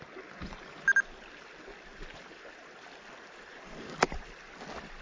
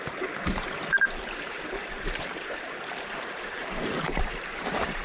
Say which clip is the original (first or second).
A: first